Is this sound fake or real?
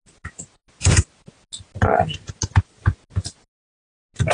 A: real